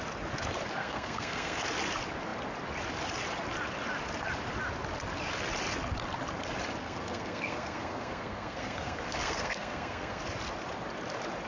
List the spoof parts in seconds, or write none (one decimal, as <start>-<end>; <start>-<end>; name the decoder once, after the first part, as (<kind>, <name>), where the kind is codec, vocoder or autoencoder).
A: 0.8-1.6 (codec, SNAC); 6.8-10.2